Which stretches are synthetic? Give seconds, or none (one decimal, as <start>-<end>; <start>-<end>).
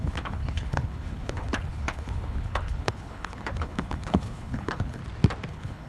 0.0-5.0; 5.5-5.9